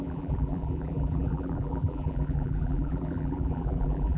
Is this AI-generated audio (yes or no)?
yes